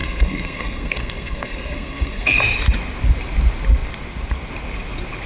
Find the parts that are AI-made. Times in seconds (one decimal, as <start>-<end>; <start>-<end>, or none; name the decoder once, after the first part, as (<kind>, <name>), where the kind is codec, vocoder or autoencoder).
0.0-2.4 (codec, SNAC)